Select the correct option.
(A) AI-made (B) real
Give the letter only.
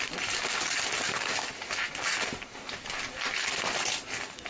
B